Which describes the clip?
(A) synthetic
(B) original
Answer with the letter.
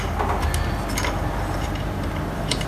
B